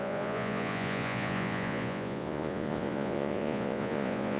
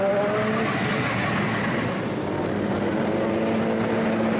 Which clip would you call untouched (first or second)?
second